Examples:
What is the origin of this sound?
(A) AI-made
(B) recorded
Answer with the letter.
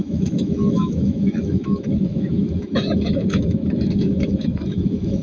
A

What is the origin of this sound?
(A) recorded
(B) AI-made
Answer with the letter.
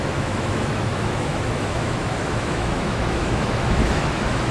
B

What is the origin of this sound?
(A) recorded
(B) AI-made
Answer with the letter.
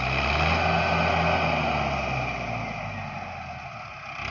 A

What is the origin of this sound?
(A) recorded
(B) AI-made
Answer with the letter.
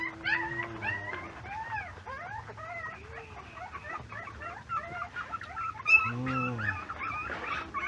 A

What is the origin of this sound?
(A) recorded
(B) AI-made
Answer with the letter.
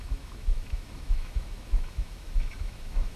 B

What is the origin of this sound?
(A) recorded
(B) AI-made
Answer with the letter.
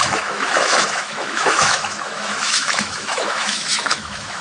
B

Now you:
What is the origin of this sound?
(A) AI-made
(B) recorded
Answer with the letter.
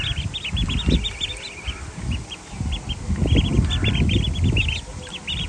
B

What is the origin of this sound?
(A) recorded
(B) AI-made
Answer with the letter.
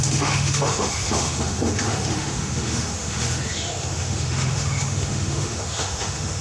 B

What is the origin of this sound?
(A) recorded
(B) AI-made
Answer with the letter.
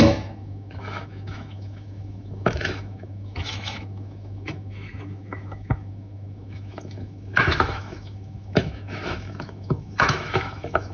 B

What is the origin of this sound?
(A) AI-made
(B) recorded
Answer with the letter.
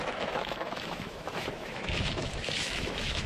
A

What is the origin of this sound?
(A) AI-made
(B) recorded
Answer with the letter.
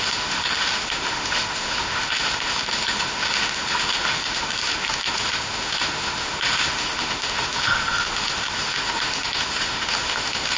A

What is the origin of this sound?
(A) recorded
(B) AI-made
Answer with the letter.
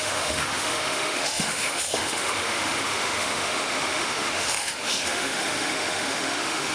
B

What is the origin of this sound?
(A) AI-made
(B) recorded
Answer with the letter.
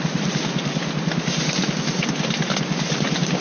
B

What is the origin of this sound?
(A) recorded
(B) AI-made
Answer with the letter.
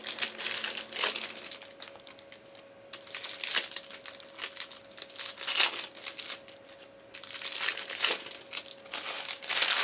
A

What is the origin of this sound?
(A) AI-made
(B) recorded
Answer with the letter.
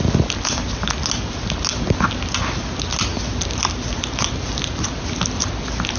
B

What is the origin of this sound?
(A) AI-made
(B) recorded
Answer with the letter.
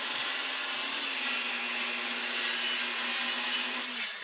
B